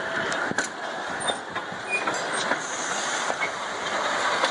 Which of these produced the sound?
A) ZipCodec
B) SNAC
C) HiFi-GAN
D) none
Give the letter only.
D